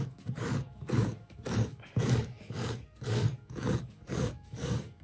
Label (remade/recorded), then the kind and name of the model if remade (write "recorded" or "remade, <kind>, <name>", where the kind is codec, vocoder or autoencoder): remade, codec, DAC